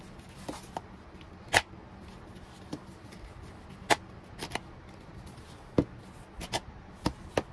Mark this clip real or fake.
real